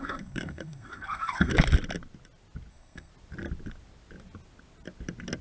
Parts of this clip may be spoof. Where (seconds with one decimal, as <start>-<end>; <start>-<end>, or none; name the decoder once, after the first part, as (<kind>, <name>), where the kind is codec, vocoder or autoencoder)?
0.0-1.5 (codec, SNAC); 2.7-3.1